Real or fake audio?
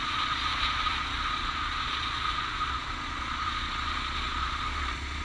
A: fake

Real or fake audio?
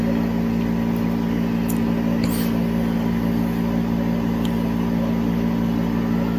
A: real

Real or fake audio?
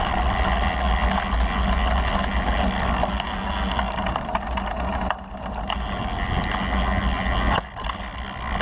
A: real